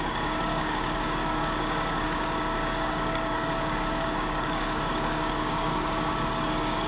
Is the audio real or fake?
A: fake